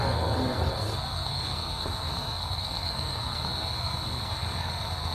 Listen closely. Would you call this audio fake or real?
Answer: fake